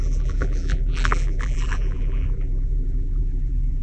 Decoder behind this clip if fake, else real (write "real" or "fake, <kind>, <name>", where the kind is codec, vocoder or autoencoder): fake, vocoder, BigVGAN v2